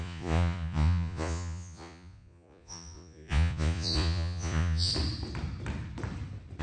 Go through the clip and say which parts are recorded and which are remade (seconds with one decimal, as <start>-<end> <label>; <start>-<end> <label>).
0.0-4.9 remade; 4.9-6.6 recorded